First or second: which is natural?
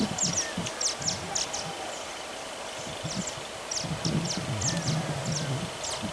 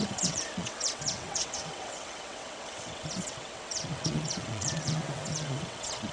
first